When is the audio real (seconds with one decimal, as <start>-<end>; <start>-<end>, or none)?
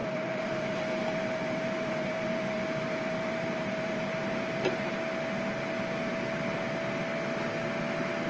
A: 4.9-8.3